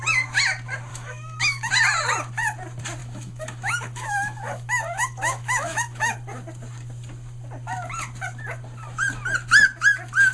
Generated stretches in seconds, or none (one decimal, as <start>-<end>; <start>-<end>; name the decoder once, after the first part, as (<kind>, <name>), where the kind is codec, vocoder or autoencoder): 0.9-1.7 (autoencoder, DAC-VAE); 3.0-6.1